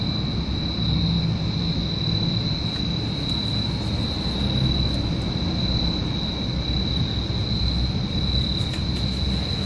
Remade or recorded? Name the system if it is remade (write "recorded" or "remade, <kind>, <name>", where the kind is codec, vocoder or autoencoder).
recorded